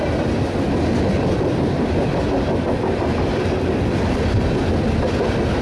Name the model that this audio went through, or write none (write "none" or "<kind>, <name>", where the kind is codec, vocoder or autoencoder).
none